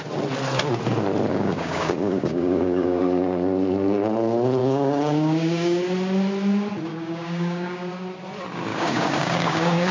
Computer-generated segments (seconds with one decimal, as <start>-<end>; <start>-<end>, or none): 1.3-3.0; 4.6-5.8; 6.9-7.9; 8.7-9.9